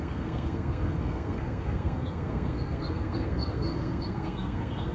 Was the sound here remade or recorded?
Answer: remade